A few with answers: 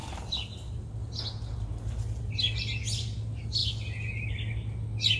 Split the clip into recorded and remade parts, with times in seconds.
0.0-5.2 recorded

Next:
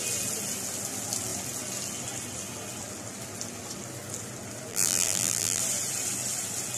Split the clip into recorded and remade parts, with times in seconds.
0.0-4.7 recorded; 4.7-5.6 remade; 5.6-6.8 recorded

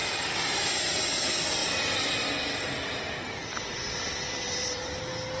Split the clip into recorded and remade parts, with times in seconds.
0.0-0.5 remade; 0.5-1.6 recorded; 1.6-2.9 remade; 2.9-3.5 recorded; 3.5-5.4 remade

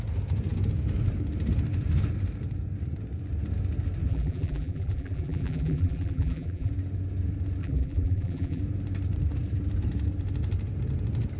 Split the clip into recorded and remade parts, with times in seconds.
0.0-4.1 recorded; 4.1-6.7 remade; 6.7-7.6 recorded; 7.6-8.6 remade; 8.6-11.4 recorded

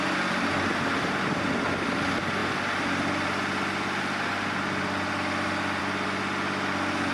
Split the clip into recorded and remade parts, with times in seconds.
0.0-7.1 recorded

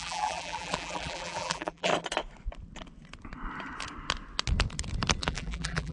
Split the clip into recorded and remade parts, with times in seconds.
0.0-1.9 remade; 1.9-5.2 recorded; 5.2-5.9 remade

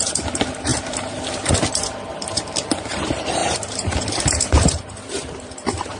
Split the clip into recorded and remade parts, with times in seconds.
0.0-6.0 remade